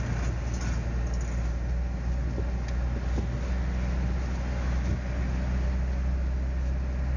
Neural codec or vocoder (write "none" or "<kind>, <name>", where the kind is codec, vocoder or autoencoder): none